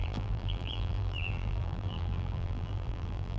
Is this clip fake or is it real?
fake